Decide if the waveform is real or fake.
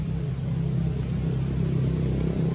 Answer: real